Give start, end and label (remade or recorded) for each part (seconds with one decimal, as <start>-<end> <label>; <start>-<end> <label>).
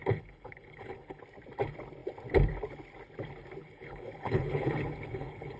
0.0-1.2 remade; 1.2-3.6 recorded; 3.6-5.6 remade